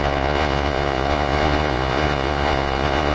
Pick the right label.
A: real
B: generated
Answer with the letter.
B